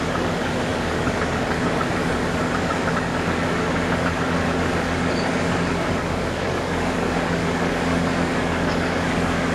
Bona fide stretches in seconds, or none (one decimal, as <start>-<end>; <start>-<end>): none